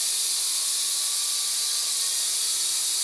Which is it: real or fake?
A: real